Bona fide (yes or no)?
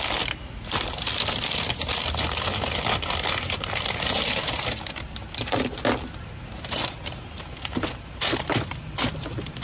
yes